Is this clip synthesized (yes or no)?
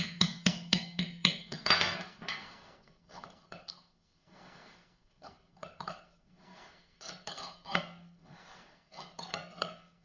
yes